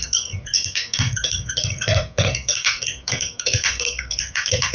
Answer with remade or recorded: remade